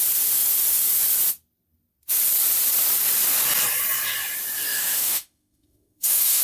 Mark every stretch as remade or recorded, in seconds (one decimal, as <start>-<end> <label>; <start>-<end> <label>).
0.0-4.7 recorded; 4.7-6.4 remade